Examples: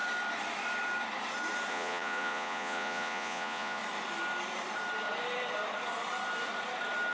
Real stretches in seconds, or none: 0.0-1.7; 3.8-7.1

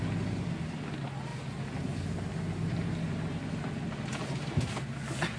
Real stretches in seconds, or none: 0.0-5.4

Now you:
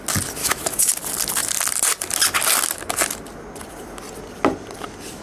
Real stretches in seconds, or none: 0.0-0.4; 0.9-5.2

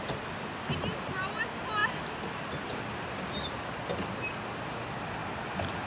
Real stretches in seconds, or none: 0.0-5.9